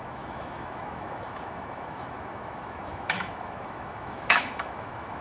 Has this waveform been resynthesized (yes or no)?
yes